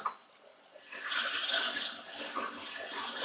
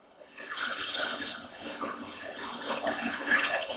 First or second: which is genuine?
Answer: first